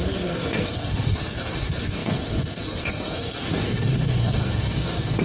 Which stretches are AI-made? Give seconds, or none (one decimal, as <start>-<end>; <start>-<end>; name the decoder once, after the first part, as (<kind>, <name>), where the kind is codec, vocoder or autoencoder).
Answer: 0.0-5.2 (codec, SNAC)